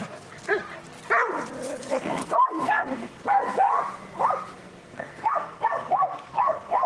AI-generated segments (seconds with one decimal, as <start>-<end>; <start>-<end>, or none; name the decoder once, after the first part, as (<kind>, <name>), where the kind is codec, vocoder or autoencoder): 1.8-3.8 (codec, SNAC); 4.6-6.9